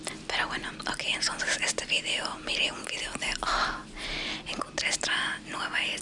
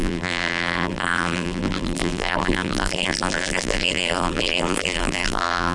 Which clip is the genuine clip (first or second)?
first